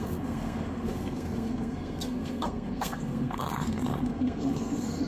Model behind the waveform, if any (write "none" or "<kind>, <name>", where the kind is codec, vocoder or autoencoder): codec, SNAC